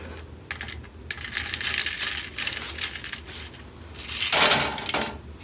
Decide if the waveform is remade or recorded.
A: recorded